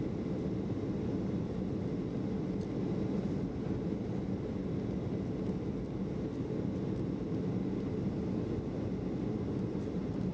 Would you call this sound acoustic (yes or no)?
yes